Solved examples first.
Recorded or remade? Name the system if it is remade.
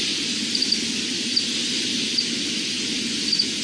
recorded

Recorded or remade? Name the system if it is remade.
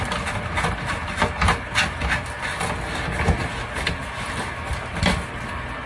recorded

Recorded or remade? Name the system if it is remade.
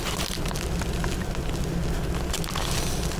remade, vocoder, BigVGAN v2